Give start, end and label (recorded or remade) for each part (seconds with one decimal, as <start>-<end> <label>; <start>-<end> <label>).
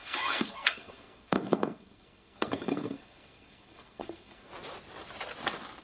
0.0-4.5 remade; 4.5-5.8 recorded